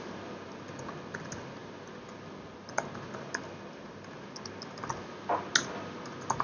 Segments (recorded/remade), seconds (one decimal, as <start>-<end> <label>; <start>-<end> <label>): 0.0-6.4 recorded